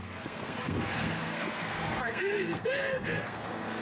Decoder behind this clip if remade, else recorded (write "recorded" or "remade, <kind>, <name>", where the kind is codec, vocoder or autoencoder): remade, codec, SNAC